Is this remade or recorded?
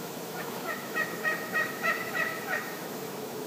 remade